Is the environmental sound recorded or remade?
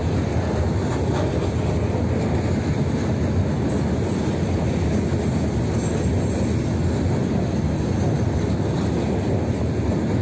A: recorded